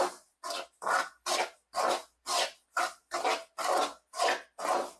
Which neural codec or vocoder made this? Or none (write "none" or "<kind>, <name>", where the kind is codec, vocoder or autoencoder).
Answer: none